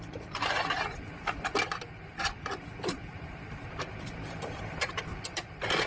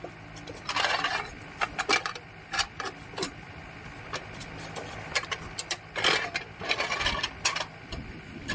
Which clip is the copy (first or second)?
first